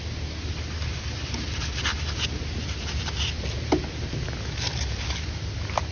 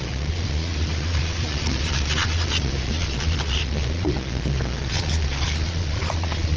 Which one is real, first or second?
first